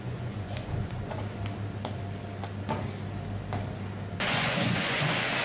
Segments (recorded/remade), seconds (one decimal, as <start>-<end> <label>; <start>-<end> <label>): 0.0-1.2 remade; 1.2-4.2 recorded; 4.2-5.4 remade